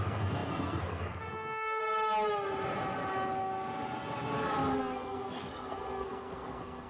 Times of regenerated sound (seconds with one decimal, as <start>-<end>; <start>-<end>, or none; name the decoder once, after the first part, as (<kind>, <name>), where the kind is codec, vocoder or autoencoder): 0.0-1.8 (codec, SNAC); 4.8-6.9